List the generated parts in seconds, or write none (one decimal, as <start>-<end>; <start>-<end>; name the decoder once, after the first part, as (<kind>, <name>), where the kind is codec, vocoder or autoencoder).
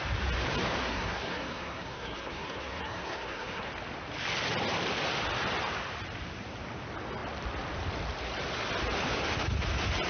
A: 0.8-3.7 (codec, SNAC)